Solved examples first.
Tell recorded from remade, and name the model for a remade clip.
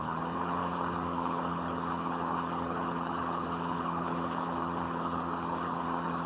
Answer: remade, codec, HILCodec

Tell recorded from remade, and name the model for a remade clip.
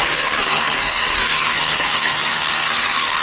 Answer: remade, codec, SNAC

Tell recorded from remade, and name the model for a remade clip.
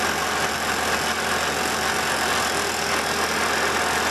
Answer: recorded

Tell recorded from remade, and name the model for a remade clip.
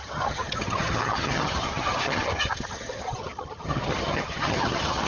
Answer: remade, vocoder, HiFi-GAN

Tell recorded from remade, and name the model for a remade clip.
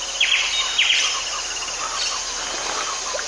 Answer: recorded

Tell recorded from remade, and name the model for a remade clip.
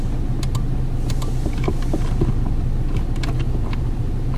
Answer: recorded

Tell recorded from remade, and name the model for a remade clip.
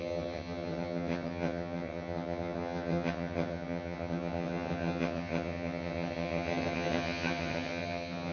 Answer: remade, vocoder, HiFi-GAN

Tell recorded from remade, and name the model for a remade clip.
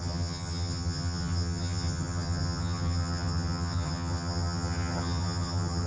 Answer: remade, vocoder, HiFi-GAN